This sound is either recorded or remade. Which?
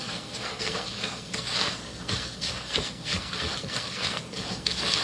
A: remade